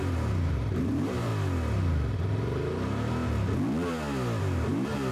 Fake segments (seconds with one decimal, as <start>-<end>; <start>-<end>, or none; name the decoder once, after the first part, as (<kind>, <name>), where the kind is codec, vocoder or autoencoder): 0.0-1.3 (vocoder, BigVGAN v2); 4.4-5.1